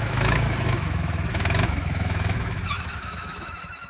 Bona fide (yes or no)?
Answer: no